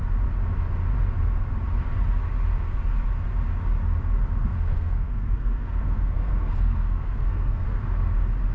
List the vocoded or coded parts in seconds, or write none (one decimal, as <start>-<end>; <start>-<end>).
4.4-7.8